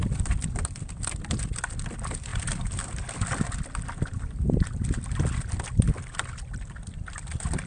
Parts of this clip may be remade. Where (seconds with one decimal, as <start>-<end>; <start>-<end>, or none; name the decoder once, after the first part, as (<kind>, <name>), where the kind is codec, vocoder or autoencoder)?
none